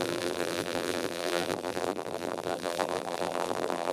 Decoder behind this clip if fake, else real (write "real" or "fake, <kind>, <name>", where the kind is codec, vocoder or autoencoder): fake, vocoder, BigVGAN v2